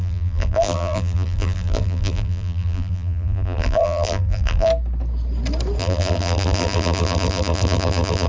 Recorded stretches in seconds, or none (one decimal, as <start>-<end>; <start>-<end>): 4.7-5.8